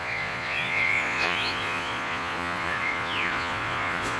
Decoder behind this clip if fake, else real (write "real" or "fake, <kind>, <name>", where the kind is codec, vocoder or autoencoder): fake, vocoder, Vocos